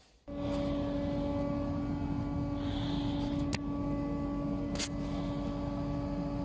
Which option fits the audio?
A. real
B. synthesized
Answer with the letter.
A